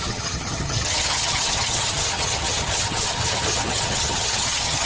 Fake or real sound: fake